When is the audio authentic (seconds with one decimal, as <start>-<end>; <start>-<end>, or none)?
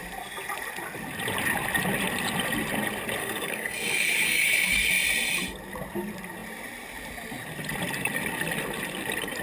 0.0-3.2; 4.9-9.4